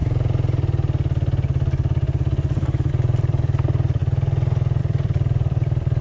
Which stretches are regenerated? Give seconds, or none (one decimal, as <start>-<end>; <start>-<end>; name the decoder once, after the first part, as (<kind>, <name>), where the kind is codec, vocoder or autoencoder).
2.9-4.0 (vocoder, BigVGAN v2); 4.8-6.0